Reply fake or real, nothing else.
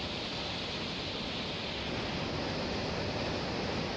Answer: real